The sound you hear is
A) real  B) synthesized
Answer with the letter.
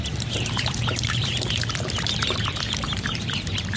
B